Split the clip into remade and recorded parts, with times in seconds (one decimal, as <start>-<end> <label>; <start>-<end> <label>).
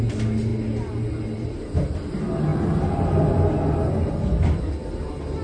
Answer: 0.0-5.4 recorded